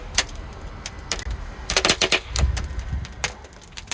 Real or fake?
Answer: real